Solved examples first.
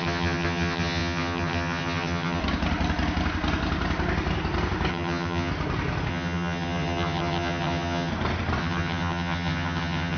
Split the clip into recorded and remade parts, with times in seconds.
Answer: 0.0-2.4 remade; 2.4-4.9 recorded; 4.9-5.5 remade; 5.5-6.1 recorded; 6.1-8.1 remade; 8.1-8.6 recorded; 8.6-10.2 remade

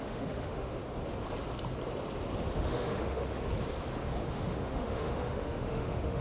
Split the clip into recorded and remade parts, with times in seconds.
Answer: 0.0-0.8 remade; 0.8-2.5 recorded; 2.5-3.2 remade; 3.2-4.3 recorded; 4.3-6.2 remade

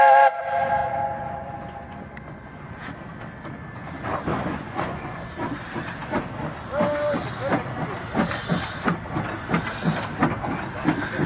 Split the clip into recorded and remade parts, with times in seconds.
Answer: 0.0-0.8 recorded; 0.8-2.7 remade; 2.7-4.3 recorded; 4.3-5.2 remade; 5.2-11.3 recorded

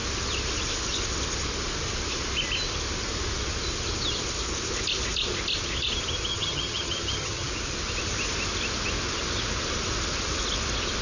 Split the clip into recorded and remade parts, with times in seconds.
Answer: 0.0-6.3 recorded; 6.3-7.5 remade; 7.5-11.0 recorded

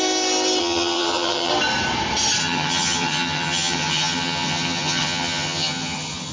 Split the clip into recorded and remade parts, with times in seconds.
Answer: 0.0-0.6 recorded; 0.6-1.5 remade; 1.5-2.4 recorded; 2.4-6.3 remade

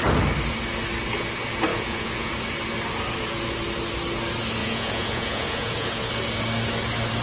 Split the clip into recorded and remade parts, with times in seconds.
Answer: 0.0-1.7 recorded; 1.7-2.3 remade; 2.3-4.6 recorded; 4.6-6.1 remade; 6.1-7.2 recorded

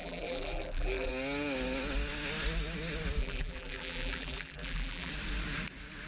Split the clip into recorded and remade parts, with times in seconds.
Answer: 0.0-1.1 remade; 1.1-3.2 recorded; 3.2-5.1 remade; 5.1-6.1 recorded

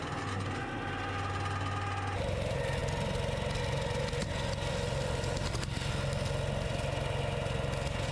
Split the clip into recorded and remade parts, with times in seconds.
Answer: 0.0-8.1 recorded